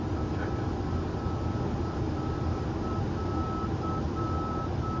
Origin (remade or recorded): recorded